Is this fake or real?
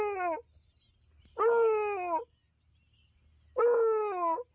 real